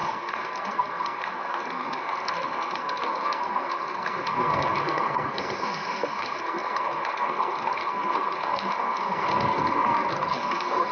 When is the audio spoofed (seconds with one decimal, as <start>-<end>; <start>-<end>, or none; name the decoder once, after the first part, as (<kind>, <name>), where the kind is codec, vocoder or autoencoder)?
0.0-10.9 (codec, SNAC)